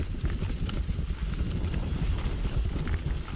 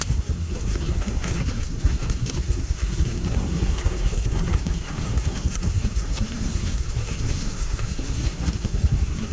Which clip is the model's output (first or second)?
second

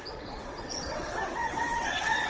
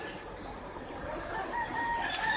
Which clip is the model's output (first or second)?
first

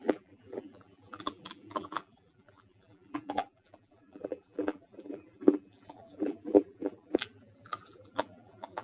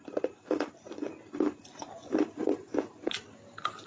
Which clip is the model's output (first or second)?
first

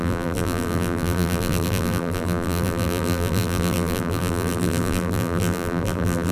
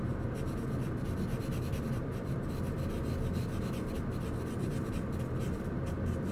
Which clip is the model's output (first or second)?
first